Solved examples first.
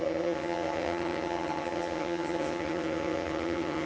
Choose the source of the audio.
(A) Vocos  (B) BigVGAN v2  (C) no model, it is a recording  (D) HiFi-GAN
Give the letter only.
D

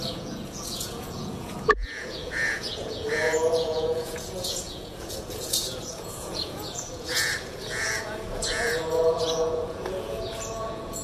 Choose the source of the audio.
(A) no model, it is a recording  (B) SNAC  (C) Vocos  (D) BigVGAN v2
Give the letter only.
C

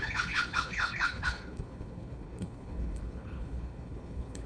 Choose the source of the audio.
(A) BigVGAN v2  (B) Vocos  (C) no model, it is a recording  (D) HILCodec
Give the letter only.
D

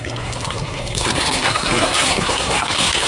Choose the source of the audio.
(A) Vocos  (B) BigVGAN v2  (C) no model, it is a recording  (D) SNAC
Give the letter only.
D